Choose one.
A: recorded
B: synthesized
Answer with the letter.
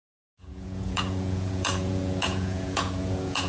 B